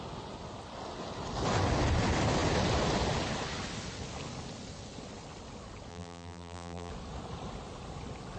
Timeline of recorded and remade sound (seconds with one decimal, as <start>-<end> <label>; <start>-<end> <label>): 0.0-5.9 recorded; 5.9-6.9 remade; 6.9-8.4 recorded